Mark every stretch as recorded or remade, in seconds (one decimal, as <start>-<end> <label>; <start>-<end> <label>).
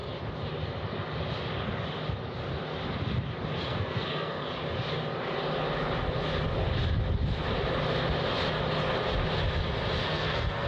0.0-3.6 recorded; 3.6-4.4 remade; 4.4-10.1 recorded; 10.1-10.7 remade